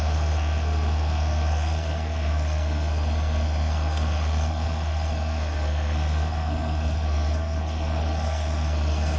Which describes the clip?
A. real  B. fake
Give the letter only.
B